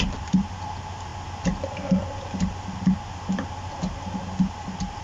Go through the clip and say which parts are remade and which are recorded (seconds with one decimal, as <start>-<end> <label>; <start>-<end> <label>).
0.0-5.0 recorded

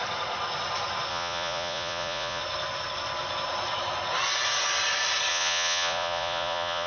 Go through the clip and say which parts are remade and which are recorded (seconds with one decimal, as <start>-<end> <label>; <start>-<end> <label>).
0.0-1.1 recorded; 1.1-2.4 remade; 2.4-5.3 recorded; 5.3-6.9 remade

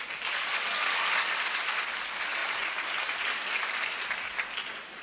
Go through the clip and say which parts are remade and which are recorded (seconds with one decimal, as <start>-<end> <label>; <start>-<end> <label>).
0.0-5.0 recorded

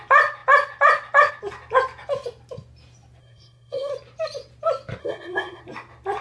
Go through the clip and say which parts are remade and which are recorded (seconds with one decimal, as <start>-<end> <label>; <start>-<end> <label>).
0.0-3.2 recorded; 3.2-3.9 remade; 3.9-5.0 recorded; 5.0-5.6 remade; 5.6-6.2 recorded

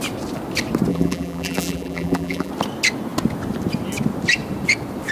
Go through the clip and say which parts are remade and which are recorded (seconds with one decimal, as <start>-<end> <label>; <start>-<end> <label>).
0.0-0.9 recorded; 0.9-2.5 remade; 2.5-5.1 recorded

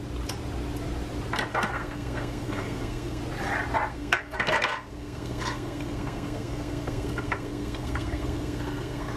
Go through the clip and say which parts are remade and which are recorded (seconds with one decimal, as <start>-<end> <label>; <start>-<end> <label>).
0.0-1.5 recorded; 1.5-3.2 remade; 3.2-3.9 recorded; 3.9-9.2 remade

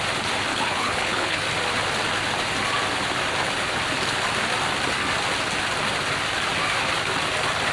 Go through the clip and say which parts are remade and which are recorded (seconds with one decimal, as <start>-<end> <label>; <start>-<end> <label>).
0.0-0.5 recorded; 0.5-1.4 remade; 1.4-7.7 recorded

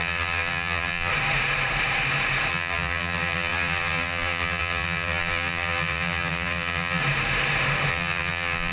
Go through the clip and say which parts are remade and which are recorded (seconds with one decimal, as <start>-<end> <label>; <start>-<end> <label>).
0.0-1.1 remade; 1.1-2.5 recorded; 2.5-7.0 remade; 7.0-7.9 recorded; 7.9-8.7 remade